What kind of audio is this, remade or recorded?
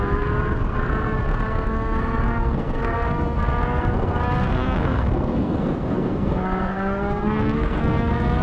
remade